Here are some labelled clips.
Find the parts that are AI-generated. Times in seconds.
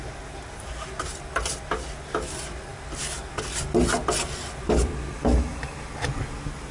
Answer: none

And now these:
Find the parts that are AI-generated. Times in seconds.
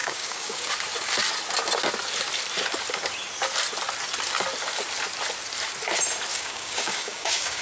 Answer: 0.0-0.7; 6.3-7.6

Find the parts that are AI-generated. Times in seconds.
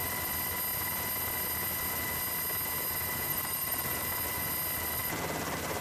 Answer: 3.3-4.0; 5.0-5.8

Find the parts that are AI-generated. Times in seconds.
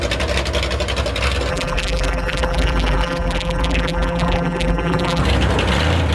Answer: 1.5-5.2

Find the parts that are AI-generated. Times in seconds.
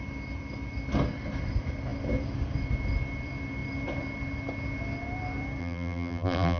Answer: 5.6-6.6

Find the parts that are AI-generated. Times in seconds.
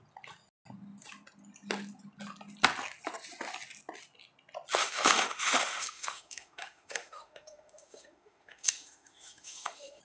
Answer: 4.8-10.0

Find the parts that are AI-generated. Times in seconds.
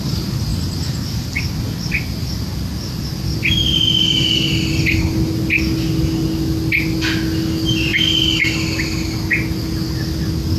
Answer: none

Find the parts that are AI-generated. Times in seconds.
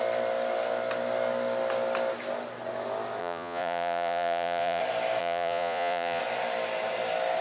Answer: 3.2-4.8; 5.2-6.2